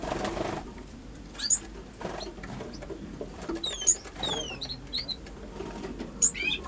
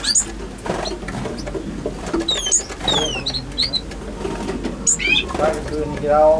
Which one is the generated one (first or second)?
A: first